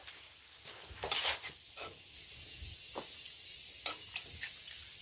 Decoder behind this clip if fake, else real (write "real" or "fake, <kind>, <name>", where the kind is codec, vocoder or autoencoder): real